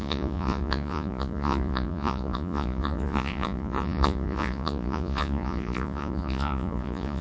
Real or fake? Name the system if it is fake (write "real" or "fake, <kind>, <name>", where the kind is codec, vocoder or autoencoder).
fake, vocoder, Vocos